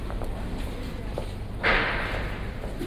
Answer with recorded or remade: recorded